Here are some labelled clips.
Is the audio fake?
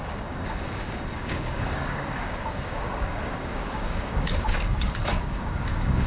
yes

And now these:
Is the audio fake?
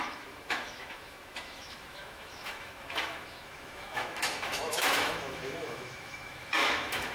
yes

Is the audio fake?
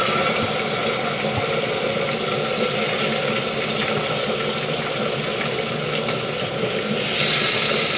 no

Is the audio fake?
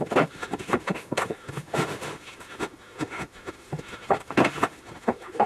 yes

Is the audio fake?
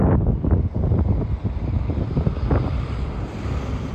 no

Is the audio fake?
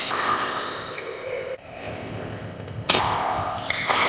yes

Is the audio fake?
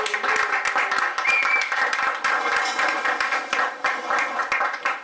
no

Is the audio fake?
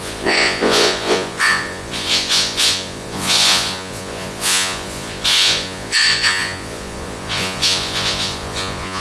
yes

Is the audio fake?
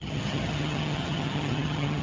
yes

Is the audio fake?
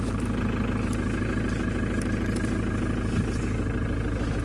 no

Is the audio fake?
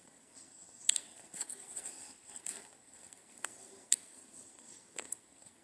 yes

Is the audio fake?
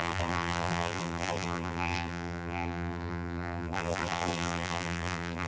yes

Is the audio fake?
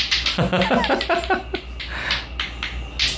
no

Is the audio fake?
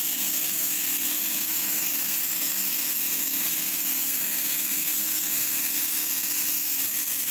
yes